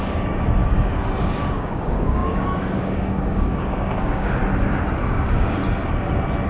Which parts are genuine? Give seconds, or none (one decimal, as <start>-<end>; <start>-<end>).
0.6-1.2; 4.4-5.1; 5.6-6.5